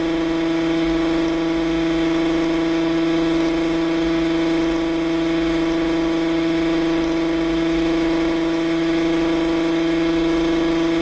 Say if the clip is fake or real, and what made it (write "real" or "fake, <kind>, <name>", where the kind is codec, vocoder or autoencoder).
real